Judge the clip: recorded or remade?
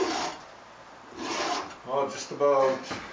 recorded